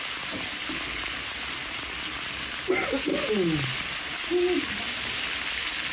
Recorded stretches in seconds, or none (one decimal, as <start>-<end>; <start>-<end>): 0.0-5.9